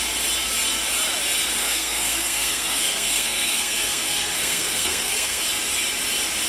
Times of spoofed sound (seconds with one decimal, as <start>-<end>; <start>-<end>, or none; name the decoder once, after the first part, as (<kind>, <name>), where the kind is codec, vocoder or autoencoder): 1.6-5.4 (codec, SNAC)